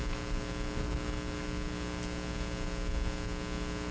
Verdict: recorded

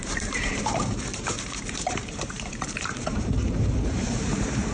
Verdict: remade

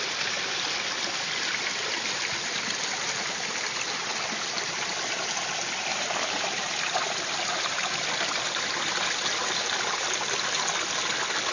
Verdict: recorded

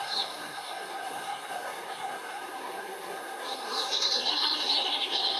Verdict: remade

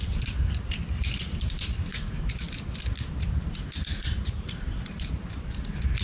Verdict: recorded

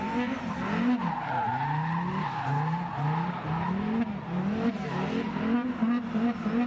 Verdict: recorded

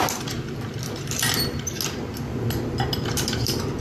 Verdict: recorded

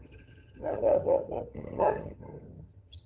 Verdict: remade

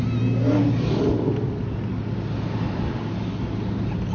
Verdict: recorded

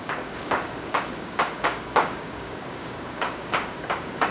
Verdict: remade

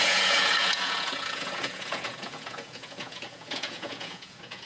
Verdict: remade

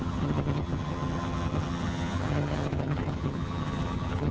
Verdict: remade